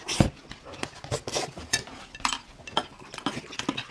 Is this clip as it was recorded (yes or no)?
yes